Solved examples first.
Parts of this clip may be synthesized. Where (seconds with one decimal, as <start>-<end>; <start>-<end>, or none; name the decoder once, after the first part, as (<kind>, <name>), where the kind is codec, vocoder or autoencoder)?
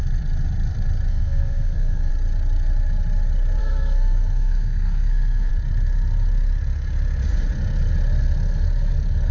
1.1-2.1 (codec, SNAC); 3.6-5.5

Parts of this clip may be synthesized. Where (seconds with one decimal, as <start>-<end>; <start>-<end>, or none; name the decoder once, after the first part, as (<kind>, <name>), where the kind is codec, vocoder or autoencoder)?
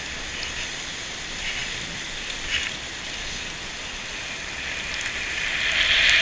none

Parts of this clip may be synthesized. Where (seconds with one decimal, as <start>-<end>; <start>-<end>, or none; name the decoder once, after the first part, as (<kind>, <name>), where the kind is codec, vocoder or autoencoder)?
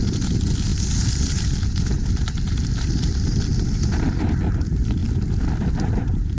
none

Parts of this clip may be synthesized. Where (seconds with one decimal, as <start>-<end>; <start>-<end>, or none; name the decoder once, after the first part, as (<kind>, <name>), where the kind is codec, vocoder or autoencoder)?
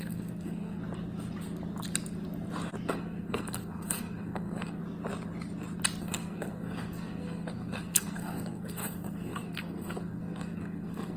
0.0-0.8 (codec, SNAC); 2.9-4.8; 6.0-11.2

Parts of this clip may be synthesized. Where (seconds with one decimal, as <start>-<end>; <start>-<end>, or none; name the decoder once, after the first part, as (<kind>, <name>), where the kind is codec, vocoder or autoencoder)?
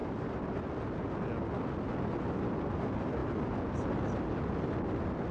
none